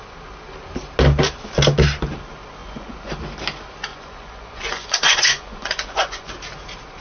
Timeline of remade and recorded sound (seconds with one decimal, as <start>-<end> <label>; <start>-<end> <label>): 0.0-2.6 recorded; 2.6-3.1 remade; 3.1-3.9 recorded; 3.9-6.3 remade; 6.3-7.0 recorded